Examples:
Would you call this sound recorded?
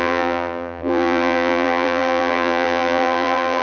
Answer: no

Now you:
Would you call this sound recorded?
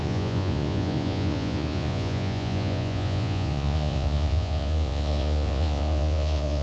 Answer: no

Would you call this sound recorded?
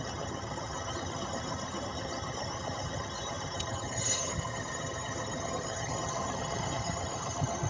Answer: no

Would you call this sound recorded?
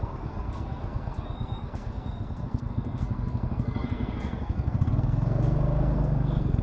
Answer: no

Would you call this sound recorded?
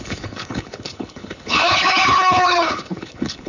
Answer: no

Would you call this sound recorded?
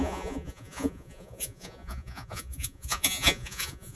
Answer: no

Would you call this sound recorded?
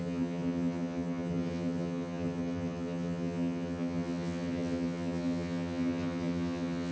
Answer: no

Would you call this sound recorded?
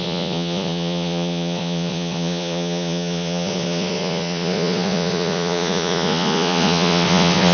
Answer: no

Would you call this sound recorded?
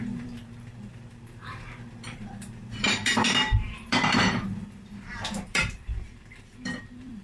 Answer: no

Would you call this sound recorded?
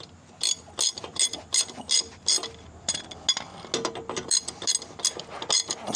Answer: yes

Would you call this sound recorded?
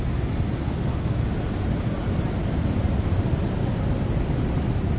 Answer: yes